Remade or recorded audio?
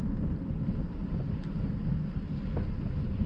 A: recorded